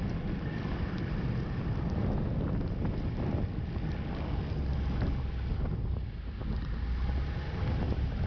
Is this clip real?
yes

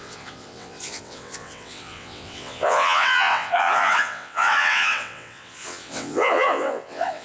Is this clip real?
no